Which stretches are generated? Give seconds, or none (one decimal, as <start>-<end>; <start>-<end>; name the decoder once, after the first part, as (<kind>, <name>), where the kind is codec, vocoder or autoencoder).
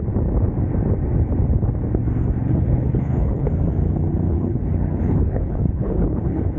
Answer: 2.4-3.5 (codec, HILCodec); 4.3-6.6